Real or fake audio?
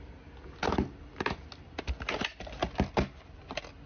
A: real